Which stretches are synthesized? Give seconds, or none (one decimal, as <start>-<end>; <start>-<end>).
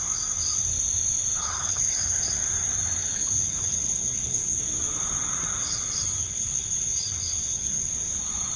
1.4-2.2; 3.0-4.6; 6.2-7.9